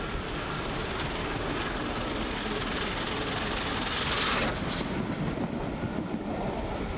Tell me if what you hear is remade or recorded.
recorded